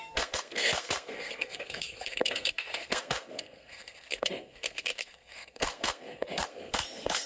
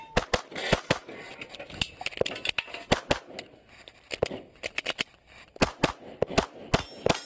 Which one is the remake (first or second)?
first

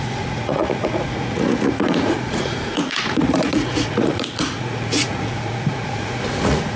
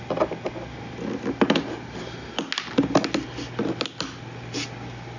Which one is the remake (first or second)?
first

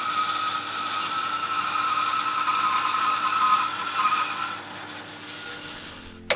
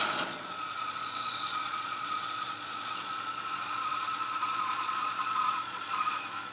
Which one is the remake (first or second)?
second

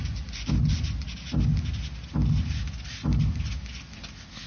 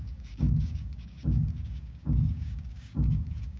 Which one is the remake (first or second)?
second